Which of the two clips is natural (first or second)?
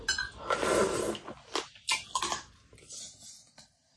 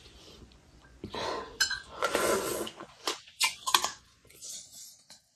first